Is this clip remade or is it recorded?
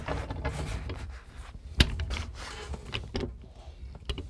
recorded